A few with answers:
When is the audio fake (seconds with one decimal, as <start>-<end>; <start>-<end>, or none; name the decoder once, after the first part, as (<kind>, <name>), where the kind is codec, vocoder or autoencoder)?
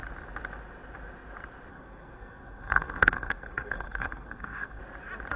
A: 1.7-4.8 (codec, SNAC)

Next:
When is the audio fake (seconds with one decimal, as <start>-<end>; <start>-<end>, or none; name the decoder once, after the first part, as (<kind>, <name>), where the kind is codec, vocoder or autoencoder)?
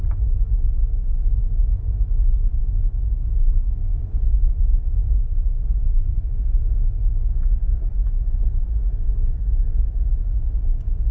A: 3.9-4.6 (vocoder, BigVGAN v2); 6.1-6.6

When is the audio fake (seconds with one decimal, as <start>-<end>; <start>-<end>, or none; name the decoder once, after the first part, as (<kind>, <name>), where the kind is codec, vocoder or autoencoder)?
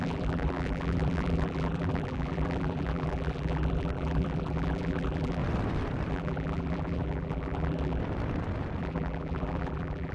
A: 0.0-5.4 (vocoder, BigVGAN v2); 6.1-8.0; 8.8-10.1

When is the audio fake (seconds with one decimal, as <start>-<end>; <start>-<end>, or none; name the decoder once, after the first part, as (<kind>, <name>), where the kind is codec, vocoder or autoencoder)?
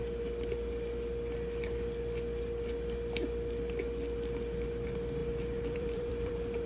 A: 5.2-6.3 (vocoder, BigVGAN v2)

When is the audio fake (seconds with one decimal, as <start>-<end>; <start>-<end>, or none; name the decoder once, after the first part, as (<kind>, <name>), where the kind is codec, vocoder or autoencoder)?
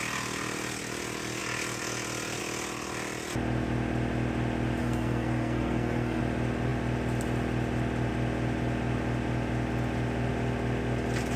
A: 4.8-6.2 (codec, SNAC)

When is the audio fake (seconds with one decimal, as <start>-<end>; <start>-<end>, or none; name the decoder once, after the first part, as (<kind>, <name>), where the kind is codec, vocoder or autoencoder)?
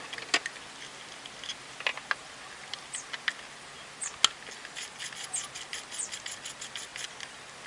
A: none